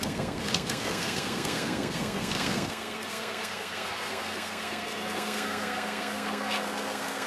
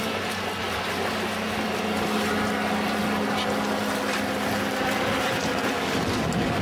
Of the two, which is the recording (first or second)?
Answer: second